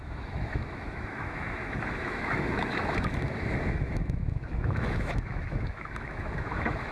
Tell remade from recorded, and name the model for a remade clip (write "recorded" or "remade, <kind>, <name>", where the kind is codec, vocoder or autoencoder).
remade, autoencoder, DAC-VAE